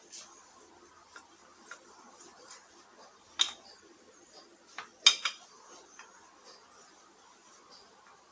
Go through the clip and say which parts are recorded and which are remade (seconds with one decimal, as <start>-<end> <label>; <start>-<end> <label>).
0.0-8.3 recorded